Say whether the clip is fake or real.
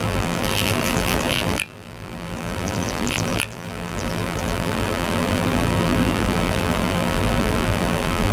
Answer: fake